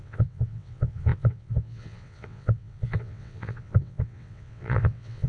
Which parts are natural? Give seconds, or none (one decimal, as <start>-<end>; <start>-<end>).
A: none